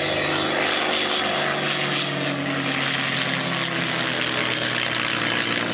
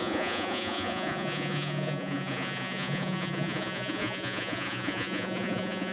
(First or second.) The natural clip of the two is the first